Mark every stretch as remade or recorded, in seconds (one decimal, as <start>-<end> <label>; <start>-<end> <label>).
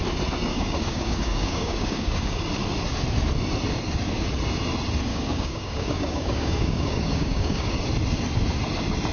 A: 0.0-0.5 recorded; 0.5-2.4 remade; 2.4-5.1 recorded; 5.1-7.8 remade; 7.8-9.1 recorded